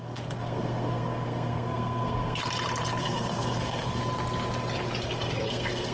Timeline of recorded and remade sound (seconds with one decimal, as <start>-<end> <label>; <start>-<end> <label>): 0.0-2.4 remade; 2.4-3.0 recorded; 3.0-4.0 remade; 4.0-5.0 recorded; 5.0-5.9 remade